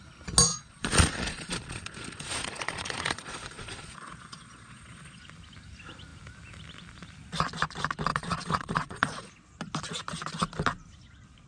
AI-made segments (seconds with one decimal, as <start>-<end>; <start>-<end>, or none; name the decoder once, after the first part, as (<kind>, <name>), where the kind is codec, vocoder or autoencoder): 0.5-5.2 (vocoder, Vocos); 8.1-9.3